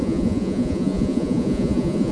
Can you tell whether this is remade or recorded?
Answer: remade